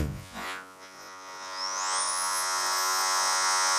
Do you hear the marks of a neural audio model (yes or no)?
yes